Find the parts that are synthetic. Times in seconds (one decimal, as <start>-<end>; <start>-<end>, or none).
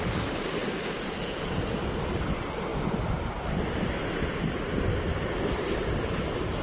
none